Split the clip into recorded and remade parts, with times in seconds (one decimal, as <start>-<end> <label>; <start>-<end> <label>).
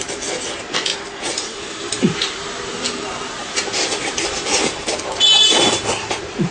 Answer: 0.0-0.9 remade; 0.9-1.8 recorded; 1.8-3.4 remade; 3.4-4.2 recorded; 4.2-6.5 remade